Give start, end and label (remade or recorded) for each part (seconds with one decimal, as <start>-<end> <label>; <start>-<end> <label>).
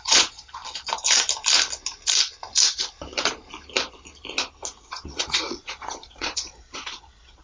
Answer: 0.0-0.6 remade; 0.6-4.8 recorded; 4.8-7.4 remade